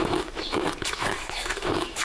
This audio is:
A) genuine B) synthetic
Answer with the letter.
B